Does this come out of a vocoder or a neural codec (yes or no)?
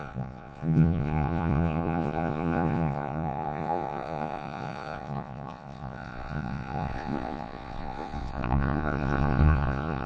yes